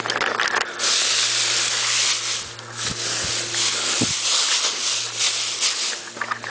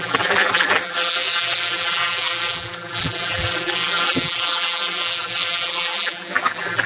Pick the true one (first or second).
first